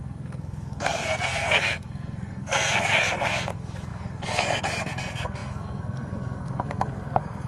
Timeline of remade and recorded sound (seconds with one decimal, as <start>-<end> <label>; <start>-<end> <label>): 0.0-7.5 remade